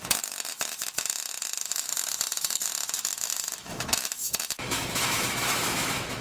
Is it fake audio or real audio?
fake